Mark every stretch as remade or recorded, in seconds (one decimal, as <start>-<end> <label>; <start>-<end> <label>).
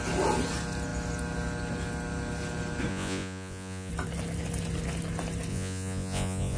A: 0.0-2.9 recorded; 2.9-3.9 remade; 3.9-5.5 recorded; 5.5-6.6 remade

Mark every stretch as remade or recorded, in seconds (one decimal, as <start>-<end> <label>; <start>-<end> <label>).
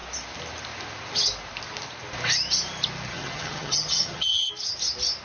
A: 0.0-3.1 recorded; 3.1-4.5 remade; 4.5-5.2 recorded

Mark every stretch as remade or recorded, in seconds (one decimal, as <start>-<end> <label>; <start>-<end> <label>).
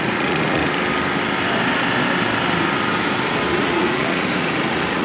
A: 0.0-0.6 remade; 0.6-3.6 recorded; 3.6-5.0 remade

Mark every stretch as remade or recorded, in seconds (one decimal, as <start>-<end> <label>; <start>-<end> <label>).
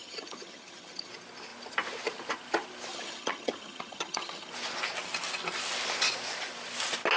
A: 0.0-1.1 remade; 1.1-2.9 recorded; 2.9-4.5 remade; 4.5-7.2 recorded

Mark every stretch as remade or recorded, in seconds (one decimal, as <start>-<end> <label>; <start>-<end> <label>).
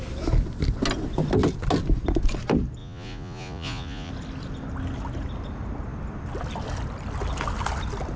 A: 0.0-2.8 recorded; 2.8-4.1 remade; 4.1-8.2 recorded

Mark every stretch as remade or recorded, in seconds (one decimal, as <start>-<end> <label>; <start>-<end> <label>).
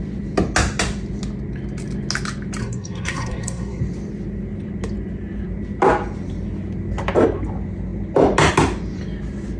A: 0.0-2.6 recorded; 2.6-3.8 remade; 3.8-9.6 recorded